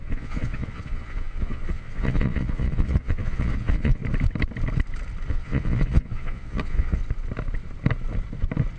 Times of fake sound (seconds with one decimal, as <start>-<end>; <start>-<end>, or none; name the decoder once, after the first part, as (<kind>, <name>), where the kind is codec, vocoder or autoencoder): 0.0-4.0 (vocoder, Vocos); 5.3-7.0